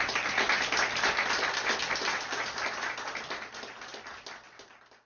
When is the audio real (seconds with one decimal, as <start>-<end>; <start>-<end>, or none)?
0.0-5.0